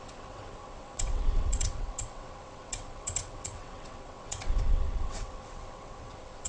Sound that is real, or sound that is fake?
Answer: fake